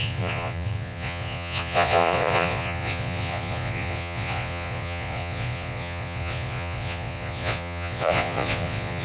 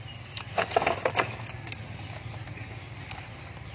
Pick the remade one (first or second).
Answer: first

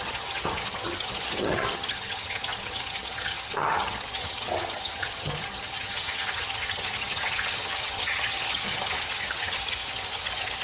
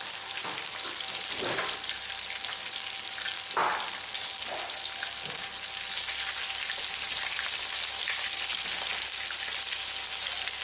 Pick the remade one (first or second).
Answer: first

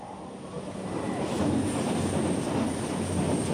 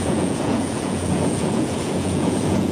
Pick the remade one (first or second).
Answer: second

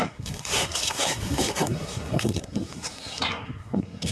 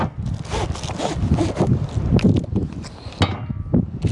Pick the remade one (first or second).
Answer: first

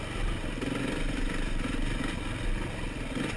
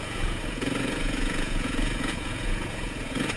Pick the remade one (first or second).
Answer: second